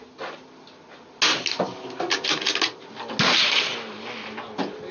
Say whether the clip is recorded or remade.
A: recorded